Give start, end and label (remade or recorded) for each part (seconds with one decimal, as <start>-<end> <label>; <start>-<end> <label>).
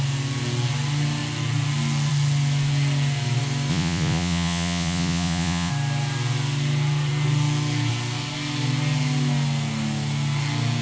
0.0-3.7 recorded; 3.7-5.7 remade; 5.7-10.8 recorded